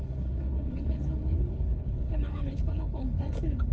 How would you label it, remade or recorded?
remade